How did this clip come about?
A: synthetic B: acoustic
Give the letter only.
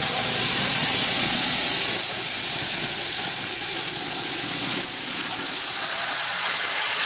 A